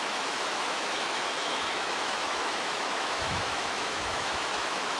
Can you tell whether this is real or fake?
fake